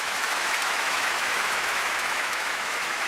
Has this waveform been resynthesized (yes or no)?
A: yes